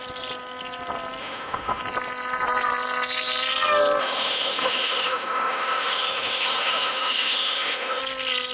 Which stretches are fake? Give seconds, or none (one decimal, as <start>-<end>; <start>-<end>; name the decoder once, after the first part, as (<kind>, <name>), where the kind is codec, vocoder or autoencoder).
1.2-1.8 (autoencoder, DAC-VAE); 4.0-8.0